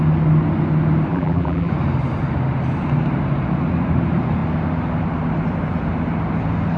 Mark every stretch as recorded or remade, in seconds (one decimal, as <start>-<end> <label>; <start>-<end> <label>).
0.0-1.1 recorded; 1.1-1.7 remade; 1.7-6.8 recorded